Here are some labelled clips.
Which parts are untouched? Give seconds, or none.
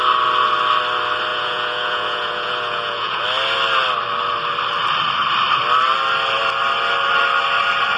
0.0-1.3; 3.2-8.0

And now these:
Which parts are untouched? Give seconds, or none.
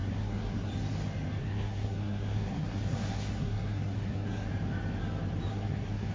0.7-1.4; 4.5-5.5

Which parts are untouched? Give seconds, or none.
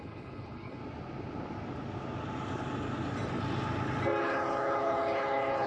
0.8-4.2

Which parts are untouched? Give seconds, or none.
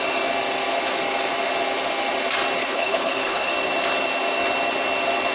0.0-2.6; 3.5-5.3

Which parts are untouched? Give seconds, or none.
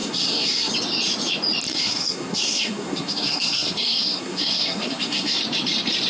0.7-1.7; 5.4-6.1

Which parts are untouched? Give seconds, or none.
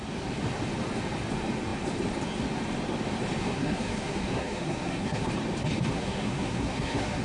0.0-3.4; 5.3-5.9